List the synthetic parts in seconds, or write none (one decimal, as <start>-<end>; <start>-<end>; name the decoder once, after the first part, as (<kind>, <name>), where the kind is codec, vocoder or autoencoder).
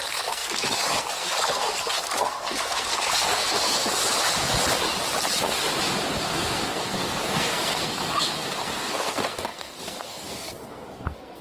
0.0-4.0 (codec, SNAC); 6.2-11.4